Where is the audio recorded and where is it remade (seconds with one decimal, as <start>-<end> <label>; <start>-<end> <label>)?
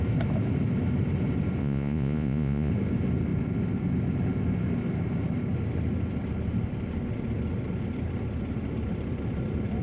0.0-1.6 recorded; 1.6-2.7 remade; 2.7-9.8 recorded